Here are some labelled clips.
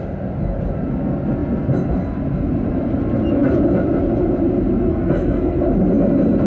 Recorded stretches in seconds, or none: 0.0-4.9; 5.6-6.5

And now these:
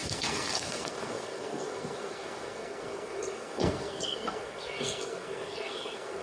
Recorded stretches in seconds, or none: none

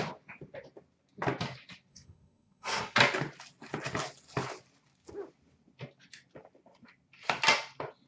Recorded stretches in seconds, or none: 0.0-1.9; 3.0-8.1

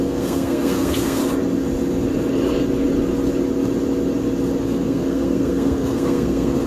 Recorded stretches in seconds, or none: 1.2-4.6